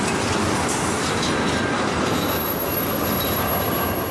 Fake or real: real